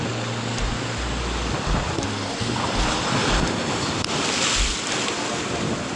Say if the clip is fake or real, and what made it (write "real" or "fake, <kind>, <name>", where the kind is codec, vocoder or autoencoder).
real